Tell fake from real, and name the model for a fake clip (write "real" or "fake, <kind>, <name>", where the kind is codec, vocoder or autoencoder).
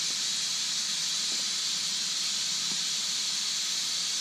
real